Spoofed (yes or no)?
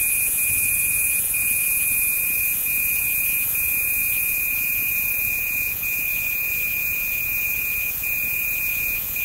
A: yes